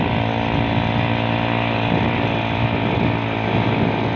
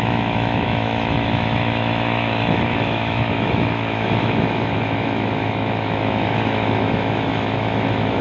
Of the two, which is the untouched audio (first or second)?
first